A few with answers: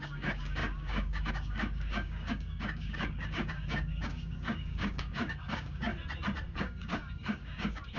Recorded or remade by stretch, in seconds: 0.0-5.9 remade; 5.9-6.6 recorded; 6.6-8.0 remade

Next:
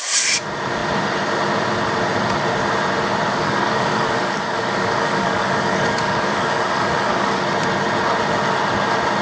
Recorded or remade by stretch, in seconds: 0.0-3.3 recorded; 3.3-7.4 remade; 7.4-9.2 recorded

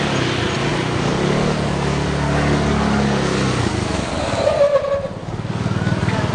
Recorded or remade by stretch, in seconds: 0.0-0.7 recorded; 0.7-4.5 remade; 4.5-5.2 recorded; 5.2-6.3 remade

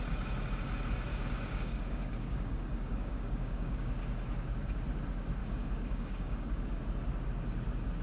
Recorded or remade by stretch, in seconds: 0.0-1.1 recorded; 1.1-3.9 remade; 3.9-5.4 recorded; 5.4-6.8 remade; 6.8-8.0 recorded

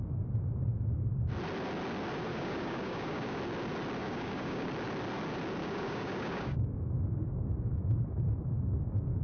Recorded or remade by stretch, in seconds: 0.0-2.3 recorded; 2.3-3.4 remade; 3.4-4.0 recorded; 4.0-4.7 remade; 4.7-5.6 recorded; 5.6-9.2 remade

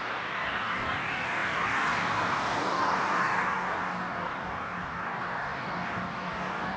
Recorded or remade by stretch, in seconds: 0.0-6.8 remade